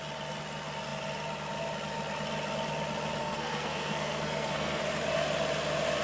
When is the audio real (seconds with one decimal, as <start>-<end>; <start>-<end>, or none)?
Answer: 0.0-3.2; 4.8-6.0